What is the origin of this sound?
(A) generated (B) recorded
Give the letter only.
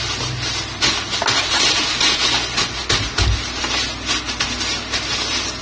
B